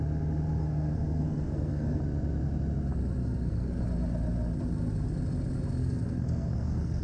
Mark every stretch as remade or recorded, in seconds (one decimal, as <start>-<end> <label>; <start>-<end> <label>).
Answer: 0.0-0.6 recorded; 0.6-2.0 remade; 2.0-3.2 recorded; 3.2-3.8 remade; 3.8-5.8 recorded; 5.8-7.0 remade